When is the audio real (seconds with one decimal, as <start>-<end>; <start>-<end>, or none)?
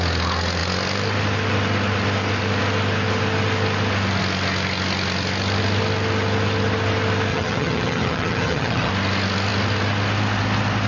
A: 0.0-7.3; 8.9-10.9